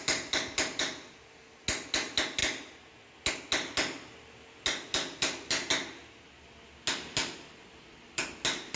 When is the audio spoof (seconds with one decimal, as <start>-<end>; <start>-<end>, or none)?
none